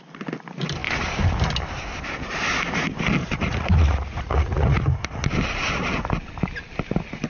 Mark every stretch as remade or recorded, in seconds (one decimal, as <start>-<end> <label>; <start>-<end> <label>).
0.0-3.2 recorded; 3.2-4.8 remade; 4.8-7.3 recorded